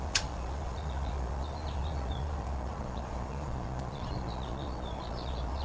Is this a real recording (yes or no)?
no